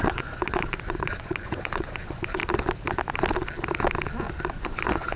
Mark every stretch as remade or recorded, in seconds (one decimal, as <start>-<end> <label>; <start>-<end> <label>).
0.0-2.4 remade; 2.4-4.5 recorded; 4.5-5.2 remade